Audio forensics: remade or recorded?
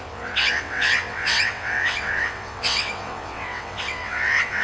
remade